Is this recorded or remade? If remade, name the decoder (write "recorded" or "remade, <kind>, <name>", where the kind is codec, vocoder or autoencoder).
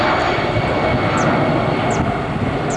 recorded